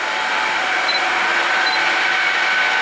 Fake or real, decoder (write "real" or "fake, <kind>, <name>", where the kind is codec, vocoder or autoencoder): real